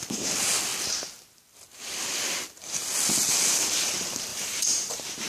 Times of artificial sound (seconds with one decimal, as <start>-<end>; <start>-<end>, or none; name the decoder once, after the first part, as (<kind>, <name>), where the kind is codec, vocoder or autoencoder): 4.3-5.3 (vocoder, BigVGAN v2)